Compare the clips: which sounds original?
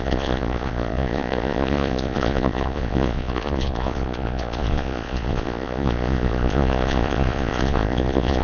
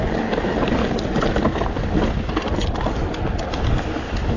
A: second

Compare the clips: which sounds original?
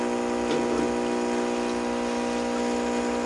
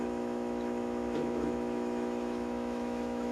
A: first